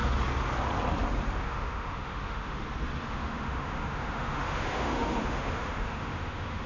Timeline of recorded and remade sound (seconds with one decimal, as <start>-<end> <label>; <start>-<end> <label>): 0.0-1.4 recorded; 1.4-2.6 remade; 2.6-3.1 recorded; 3.1-6.7 remade